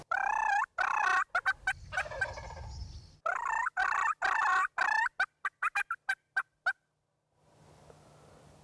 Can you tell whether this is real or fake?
real